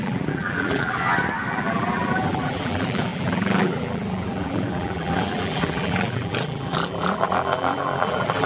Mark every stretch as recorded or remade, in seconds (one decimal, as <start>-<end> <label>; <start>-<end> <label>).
0.0-1.0 remade; 1.0-1.5 recorded; 1.5-8.5 remade